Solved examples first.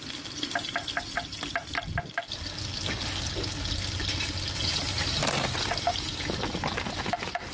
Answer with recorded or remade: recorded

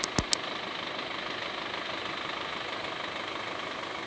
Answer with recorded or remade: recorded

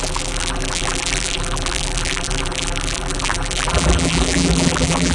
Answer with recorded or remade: remade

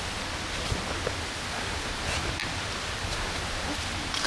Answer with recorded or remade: recorded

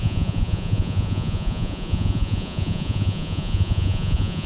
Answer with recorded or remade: remade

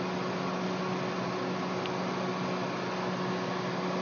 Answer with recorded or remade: recorded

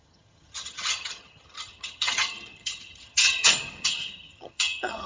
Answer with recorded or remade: remade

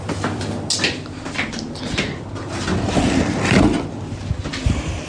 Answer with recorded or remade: recorded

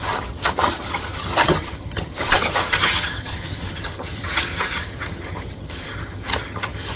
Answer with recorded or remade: remade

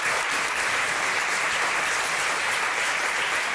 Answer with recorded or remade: recorded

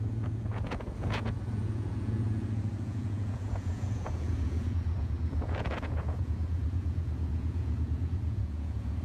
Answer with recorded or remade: remade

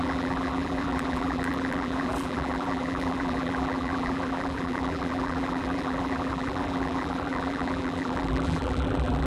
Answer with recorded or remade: remade